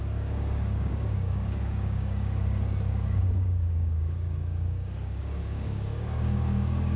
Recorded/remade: remade